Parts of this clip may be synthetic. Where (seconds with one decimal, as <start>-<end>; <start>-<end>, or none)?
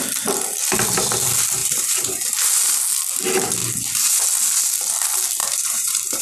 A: 1.6-2.1; 5.4-6.2